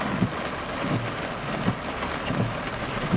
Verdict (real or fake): real